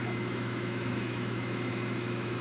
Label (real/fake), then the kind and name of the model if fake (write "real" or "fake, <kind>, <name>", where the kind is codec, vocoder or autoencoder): fake, autoencoder, DAC-VAE